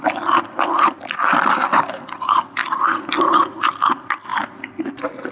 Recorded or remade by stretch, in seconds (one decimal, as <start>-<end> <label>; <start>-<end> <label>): 0.0-5.3 recorded